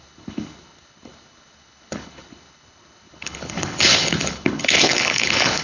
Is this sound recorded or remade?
remade